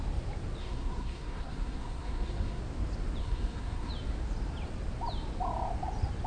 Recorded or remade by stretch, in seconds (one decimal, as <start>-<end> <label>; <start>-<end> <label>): 0.0-0.6 recorded; 0.6-2.6 remade; 2.6-3.2 recorded; 3.2-3.9 remade; 3.9-6.3 recorded